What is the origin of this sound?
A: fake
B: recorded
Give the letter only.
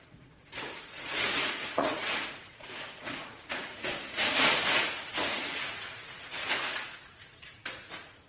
A